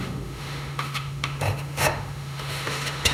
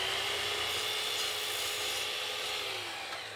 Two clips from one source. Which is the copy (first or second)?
first